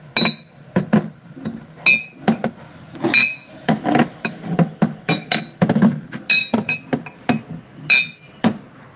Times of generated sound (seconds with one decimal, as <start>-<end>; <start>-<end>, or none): none